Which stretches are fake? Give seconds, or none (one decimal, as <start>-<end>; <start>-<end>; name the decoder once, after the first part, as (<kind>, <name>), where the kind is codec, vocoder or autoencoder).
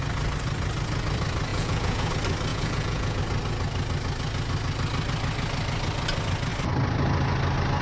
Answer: 1.5-2.1 (vocoder, Vocos); 2.5-3.2